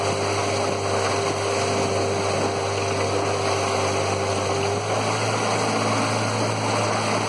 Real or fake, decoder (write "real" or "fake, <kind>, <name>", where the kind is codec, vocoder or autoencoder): real